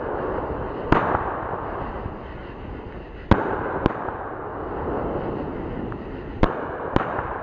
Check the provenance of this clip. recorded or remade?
recorded